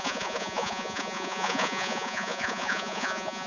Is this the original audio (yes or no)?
no